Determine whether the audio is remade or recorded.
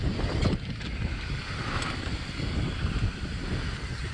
recorded